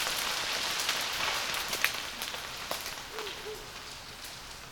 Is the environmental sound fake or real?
real